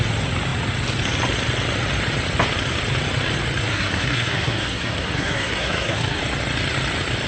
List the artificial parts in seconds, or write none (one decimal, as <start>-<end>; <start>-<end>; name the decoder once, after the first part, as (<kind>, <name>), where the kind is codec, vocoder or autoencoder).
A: 3.6-6.2 (codec, SNAC)